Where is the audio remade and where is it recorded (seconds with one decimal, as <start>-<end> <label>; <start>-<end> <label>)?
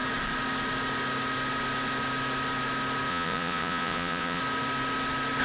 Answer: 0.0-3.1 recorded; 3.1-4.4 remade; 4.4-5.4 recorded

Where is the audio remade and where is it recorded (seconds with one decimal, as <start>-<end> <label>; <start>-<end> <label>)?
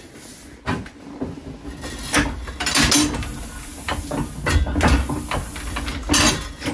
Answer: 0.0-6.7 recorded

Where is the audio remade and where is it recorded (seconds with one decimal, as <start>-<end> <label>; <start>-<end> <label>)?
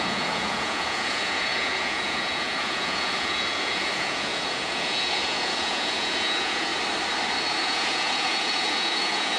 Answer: 0.0-6.7 remade; 6.7-7.6 recorded; 7.6-9.4 remade